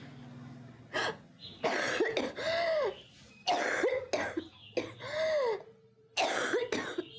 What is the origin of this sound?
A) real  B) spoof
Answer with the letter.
A